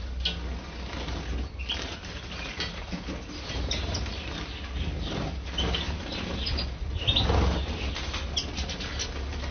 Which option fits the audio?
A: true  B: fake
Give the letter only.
A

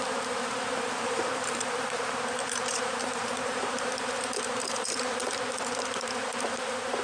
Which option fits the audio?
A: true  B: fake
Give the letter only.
B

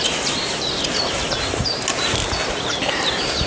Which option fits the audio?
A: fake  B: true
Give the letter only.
B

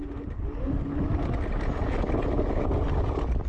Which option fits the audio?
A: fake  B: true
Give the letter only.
B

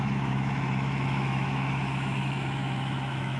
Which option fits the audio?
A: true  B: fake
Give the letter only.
B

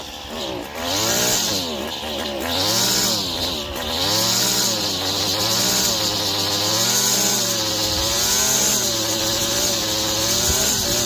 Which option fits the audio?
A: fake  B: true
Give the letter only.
B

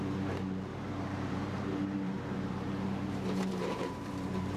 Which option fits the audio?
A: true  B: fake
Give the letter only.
B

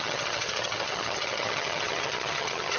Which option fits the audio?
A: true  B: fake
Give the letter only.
B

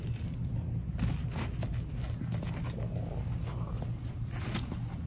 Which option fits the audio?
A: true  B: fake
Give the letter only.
A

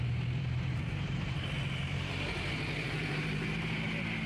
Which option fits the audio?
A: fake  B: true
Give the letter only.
A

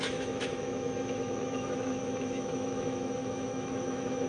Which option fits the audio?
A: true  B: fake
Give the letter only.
B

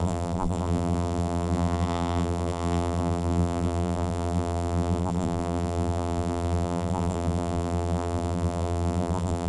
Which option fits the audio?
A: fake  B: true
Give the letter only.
A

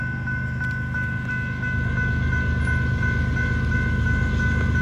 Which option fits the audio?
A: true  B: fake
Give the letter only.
A